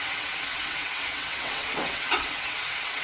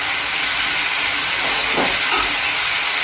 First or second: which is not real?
first